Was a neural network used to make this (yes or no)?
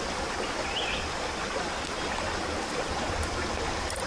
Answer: no